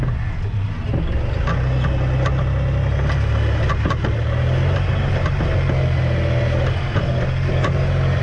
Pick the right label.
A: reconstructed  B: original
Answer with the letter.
B